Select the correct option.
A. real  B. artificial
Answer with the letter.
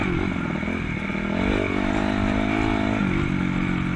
A